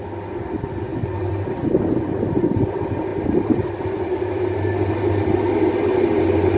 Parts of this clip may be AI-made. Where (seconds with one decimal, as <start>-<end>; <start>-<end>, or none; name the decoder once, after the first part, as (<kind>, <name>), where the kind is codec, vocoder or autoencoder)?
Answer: 0.9-1.6 (vocoder, BigVGAN v2); 3.1-4.6